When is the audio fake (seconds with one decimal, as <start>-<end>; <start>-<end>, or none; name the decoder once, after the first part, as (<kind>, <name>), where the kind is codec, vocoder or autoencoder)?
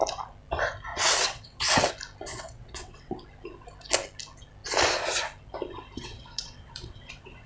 0.9-1.9 (vocoder, WaveNeXt); 2.3-3.2; 6.0-7.5